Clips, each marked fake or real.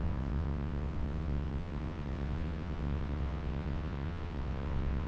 fake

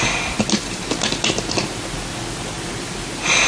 real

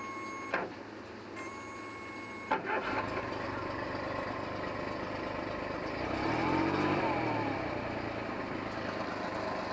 real